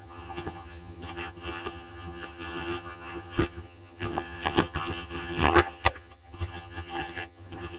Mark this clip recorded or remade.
remade